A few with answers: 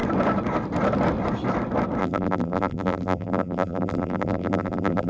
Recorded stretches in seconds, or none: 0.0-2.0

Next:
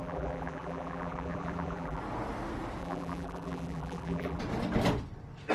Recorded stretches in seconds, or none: 2.0-2.8; 4.4-5.5

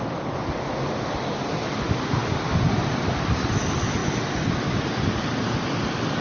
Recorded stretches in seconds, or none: 0.0-6.2

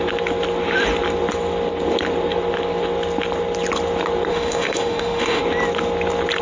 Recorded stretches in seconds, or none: 0.0-4.3; 5.4-6.4

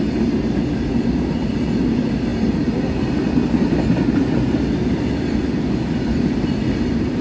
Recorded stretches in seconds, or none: 0.0-7.2

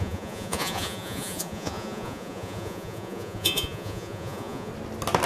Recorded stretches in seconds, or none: 4.7-5.3

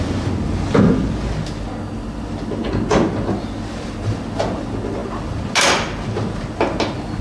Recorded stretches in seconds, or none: 0.0-7.2

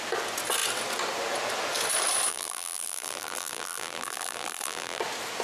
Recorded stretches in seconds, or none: 0.0-2.3; 5.0-5.4